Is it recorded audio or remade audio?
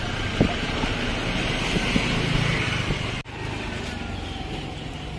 recorded